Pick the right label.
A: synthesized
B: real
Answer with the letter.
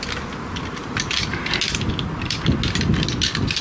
B